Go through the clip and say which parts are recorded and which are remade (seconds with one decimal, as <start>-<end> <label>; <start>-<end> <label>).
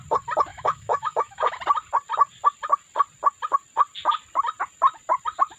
0.0-0.5 recorded; 0.5-1.6 remade; 1.6-5.6 recorded